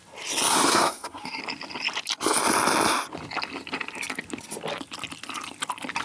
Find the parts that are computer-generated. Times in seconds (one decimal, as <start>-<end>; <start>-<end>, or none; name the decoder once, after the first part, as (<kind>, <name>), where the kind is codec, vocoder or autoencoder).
0.5-1.4 (codec, SNAC)